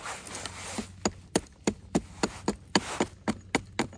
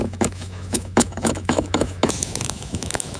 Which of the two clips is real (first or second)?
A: first